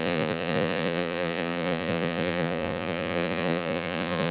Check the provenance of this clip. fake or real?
fake